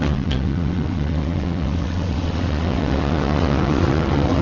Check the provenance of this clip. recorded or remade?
remade